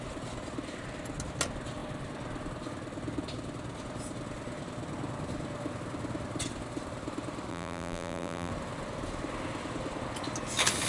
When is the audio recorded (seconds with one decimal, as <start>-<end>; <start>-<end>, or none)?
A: 0.0-7.5; 8.5-10.9